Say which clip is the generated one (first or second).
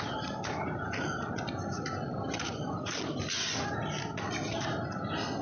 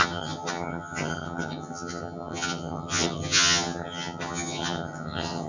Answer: second